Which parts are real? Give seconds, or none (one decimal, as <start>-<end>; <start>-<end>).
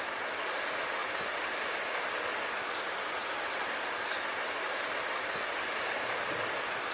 0.0-6.9